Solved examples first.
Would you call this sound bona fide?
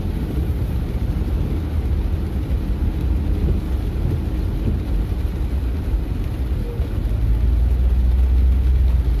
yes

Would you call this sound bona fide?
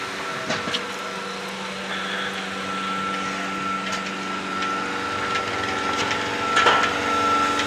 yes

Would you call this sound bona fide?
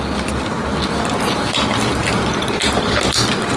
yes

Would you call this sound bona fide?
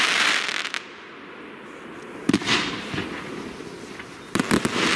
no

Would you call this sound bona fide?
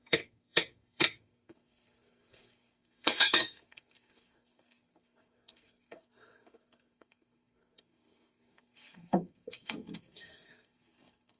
no